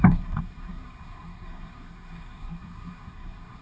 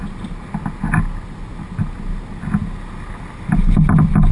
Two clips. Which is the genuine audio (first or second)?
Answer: second